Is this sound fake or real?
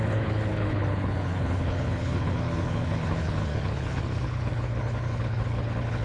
fake